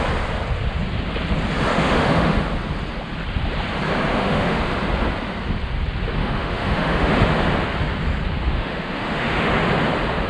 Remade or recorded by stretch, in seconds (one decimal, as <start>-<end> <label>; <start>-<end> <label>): 0.0-1.7 recorded; 1.7-2.4 remade; 2.4-4.1 recorded; 4.1-4.6 remade; 4.6-6.2 recorded; 6.2-7.1 remade; 7.1-8.5 recorded; 8.5-9.5 remade; 9.5-10.3 recorded